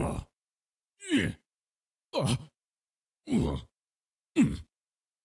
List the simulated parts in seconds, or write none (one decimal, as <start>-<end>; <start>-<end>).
none

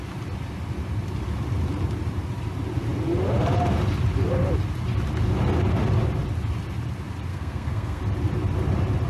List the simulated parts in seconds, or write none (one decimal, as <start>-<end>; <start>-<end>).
7.3-8.0

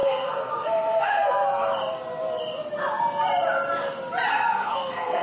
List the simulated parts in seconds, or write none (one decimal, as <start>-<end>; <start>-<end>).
0.0-1.7; 4.3-5.2